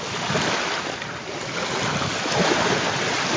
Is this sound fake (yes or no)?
no